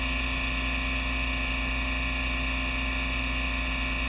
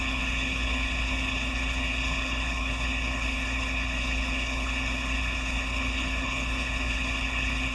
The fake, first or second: second